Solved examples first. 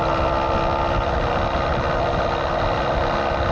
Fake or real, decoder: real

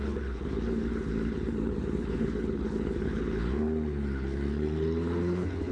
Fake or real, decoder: fake, codec, HILCodec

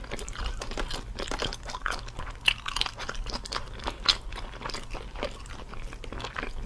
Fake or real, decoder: real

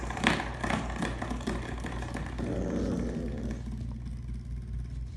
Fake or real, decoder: real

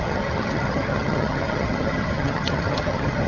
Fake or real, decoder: fake, vocoder, HiFi-GAN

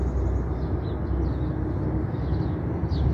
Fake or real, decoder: real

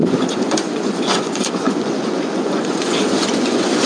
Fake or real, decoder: fake, vocoder, Vocos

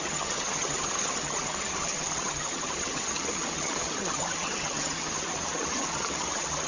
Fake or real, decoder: fake, vocoder, HiFi-GAN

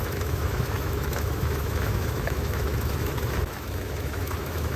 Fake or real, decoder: fake, autoencoder, DAC-VAE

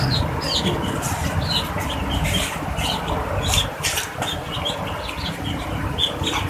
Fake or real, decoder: real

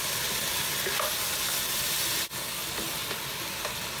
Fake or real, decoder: real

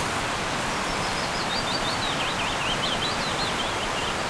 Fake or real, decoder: real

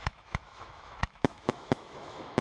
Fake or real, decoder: fake, autoencoder, DAC-VAE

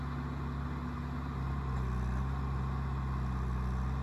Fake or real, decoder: real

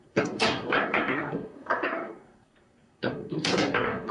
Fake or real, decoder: fake, codec, SNAC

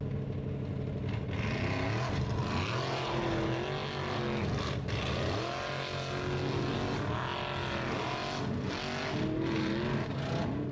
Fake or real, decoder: real